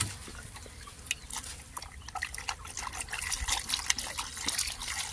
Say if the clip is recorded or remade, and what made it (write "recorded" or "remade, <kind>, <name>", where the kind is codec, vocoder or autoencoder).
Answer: recorded